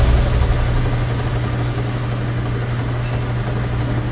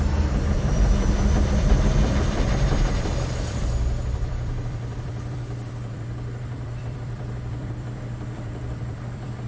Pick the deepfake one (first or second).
second